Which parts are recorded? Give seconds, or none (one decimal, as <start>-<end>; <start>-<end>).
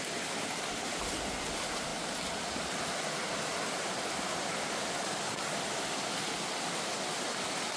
0.0-7.8